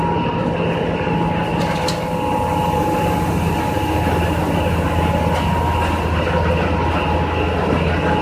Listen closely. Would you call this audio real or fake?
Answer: real